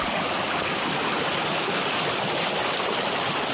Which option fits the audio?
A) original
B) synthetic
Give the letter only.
A